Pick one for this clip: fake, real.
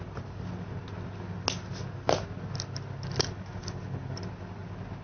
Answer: real